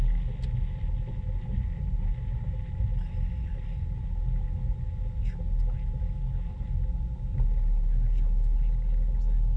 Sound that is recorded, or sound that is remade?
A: recorded